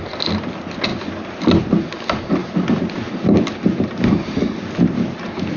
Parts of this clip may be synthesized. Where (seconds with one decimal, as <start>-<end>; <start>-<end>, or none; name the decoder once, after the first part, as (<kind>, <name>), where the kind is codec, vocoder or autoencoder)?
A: none